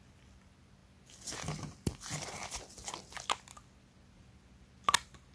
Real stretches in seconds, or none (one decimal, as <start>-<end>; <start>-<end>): 0.0-5.3